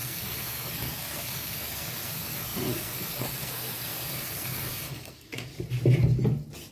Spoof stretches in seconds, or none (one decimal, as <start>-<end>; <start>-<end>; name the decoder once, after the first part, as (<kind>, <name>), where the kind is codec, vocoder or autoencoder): 0.0-5.5 (codec, SNAC)